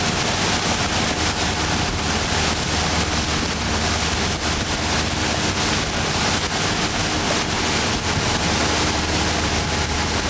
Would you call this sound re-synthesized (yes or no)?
no